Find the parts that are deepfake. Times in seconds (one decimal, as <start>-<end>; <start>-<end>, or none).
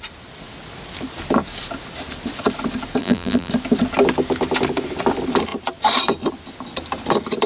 3.0-3.5